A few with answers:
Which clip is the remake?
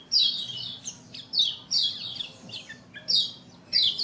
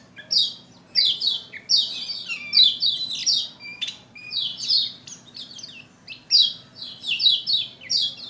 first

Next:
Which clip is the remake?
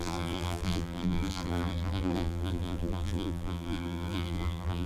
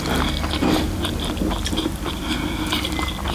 first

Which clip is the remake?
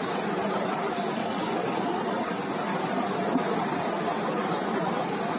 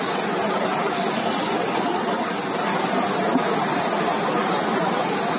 first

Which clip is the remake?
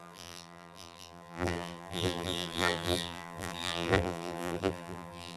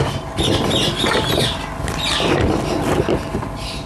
first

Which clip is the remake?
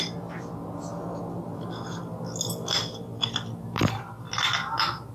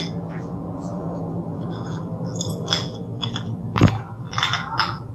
second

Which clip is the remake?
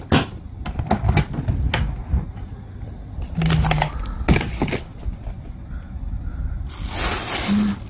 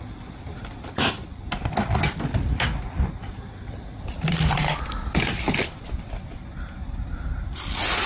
second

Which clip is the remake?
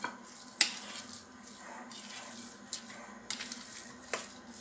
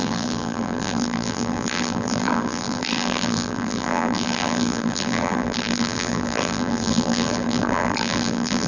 second